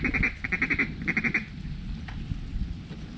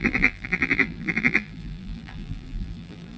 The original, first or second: first